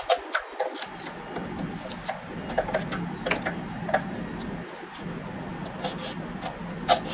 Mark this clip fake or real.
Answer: real